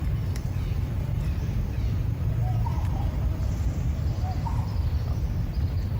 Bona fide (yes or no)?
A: no